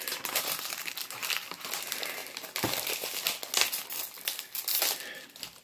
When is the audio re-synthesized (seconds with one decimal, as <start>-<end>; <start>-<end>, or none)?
0.0-1.2; 1.8-2.2